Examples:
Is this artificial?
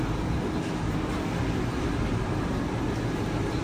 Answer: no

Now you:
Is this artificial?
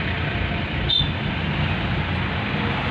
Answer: no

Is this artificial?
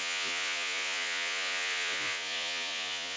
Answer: yes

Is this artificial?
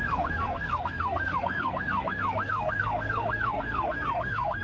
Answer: yes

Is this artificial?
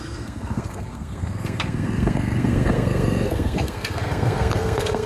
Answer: yes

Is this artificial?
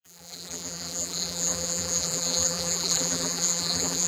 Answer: yes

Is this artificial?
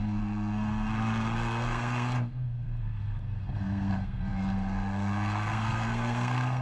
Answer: yes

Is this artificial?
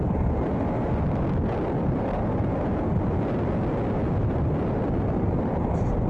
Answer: no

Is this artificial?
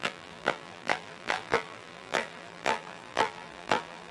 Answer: yes